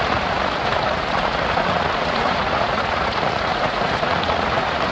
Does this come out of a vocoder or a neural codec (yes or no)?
yes